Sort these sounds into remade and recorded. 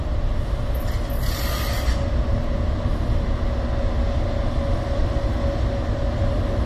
recorded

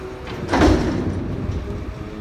recorded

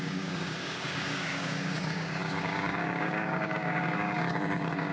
remade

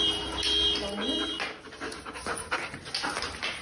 recorded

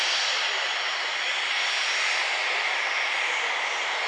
recorded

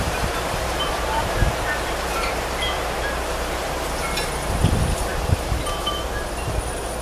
remade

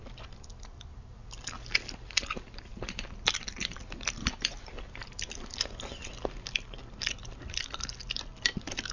recorded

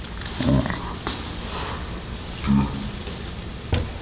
recorded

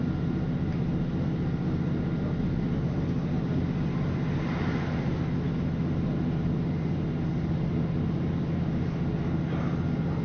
recorded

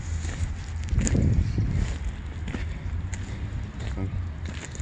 recorded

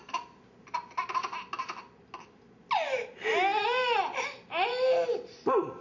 recorded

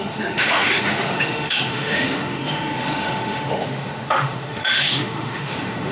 remade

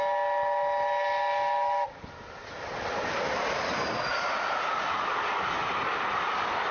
recorded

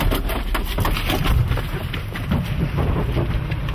recorded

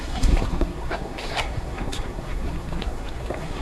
remade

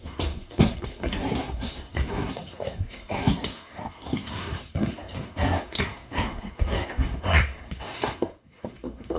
remade